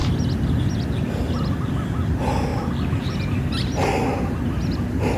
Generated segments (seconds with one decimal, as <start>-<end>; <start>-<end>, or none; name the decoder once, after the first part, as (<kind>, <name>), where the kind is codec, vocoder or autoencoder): 2.5-3.3 (vocoder, BigVGAN v2)